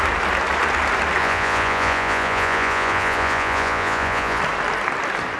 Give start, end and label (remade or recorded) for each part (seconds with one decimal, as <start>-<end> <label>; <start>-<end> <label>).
0.0-1.2 recorded; 1.2-4.4 remade; 4.4-5.4 recorded